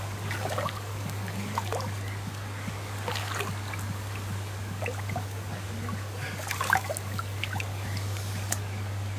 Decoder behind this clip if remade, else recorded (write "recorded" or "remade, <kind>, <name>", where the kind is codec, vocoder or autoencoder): remade, codec, DAC